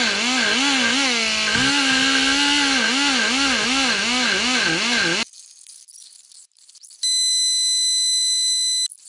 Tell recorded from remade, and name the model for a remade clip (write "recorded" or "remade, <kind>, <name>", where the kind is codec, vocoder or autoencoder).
recorded